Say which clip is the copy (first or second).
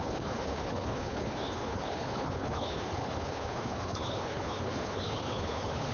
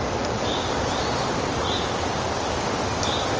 first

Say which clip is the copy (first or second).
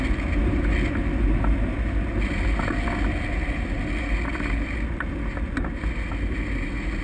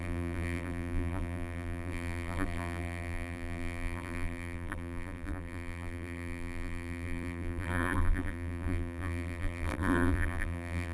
second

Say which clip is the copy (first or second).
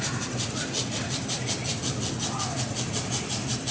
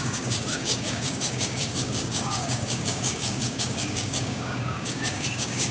second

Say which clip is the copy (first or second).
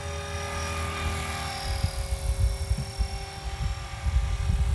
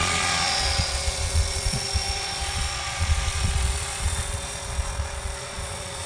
second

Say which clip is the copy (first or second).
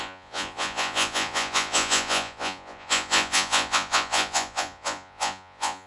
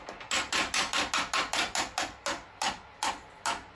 first